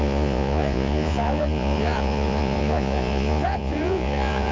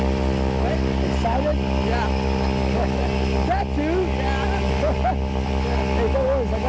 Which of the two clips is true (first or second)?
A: second